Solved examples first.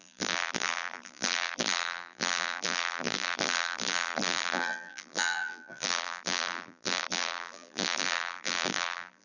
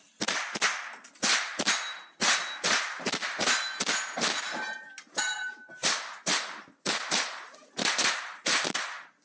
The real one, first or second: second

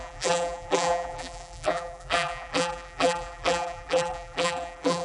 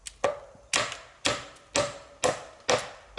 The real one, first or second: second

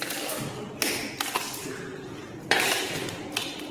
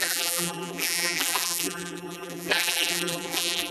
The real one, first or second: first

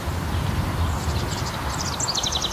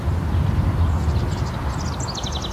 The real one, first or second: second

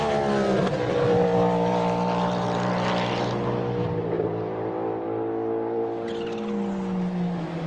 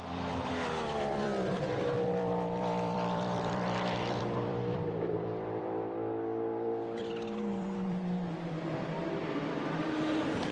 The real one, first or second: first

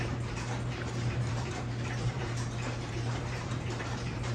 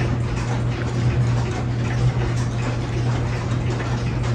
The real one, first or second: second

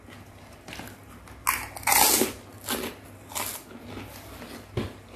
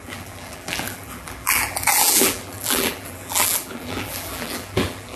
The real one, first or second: first